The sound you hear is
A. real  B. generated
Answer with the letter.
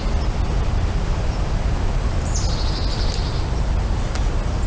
A